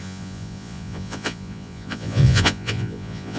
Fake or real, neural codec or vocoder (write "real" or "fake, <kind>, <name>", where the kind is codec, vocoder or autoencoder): fake, vocoder, Vocos